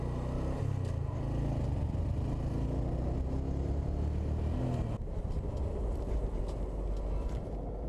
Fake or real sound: real